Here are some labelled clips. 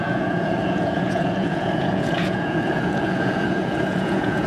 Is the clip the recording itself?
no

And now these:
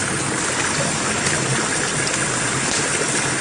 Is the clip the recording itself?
yes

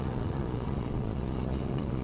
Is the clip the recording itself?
no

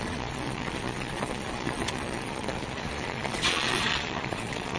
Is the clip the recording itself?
no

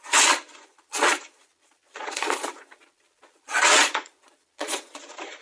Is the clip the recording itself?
no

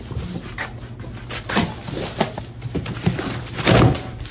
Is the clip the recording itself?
yes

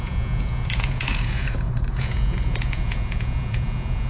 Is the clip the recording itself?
no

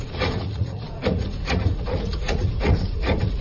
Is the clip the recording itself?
no